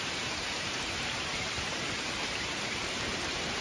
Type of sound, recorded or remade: remade